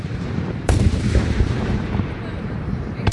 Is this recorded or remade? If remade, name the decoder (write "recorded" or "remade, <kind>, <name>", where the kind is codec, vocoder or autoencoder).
remade, vocoder, BigVGAN v2